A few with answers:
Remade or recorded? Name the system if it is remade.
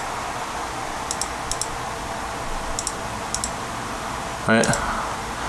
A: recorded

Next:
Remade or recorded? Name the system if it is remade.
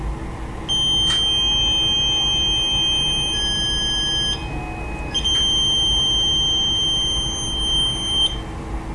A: recorded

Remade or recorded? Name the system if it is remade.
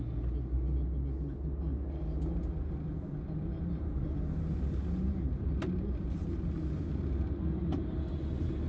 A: recorded